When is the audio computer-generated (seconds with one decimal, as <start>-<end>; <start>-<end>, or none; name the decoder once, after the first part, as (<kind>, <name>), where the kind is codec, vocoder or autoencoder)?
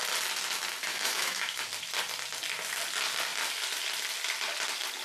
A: 0.9-1.6 (autoencoder, DAC-VAE)